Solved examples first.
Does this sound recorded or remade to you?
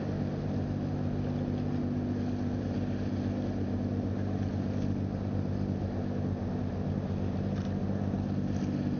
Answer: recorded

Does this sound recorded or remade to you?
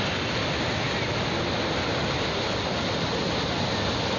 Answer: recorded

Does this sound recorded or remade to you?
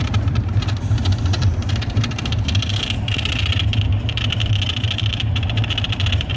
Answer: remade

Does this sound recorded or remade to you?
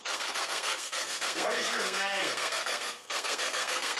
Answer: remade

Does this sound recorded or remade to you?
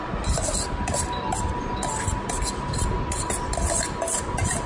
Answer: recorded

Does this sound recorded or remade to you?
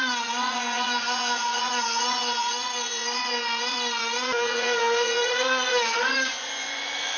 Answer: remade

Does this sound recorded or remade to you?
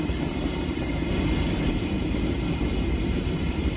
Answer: remade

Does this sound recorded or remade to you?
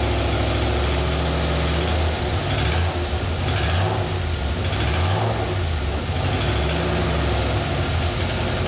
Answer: recorded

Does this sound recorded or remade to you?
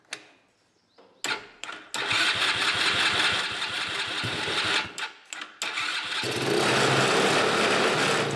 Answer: recorded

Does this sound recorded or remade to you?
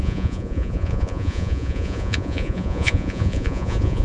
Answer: remade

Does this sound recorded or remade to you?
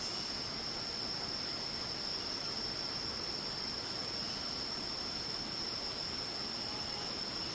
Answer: recorded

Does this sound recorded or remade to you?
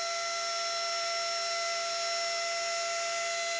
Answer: recorded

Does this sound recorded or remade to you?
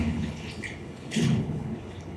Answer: remade